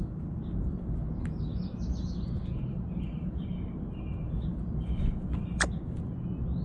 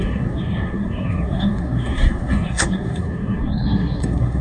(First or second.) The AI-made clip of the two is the second